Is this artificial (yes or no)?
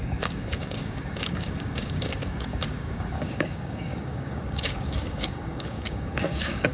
yes